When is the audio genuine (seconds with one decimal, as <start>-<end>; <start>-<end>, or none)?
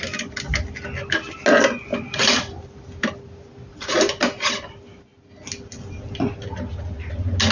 0.0-7.5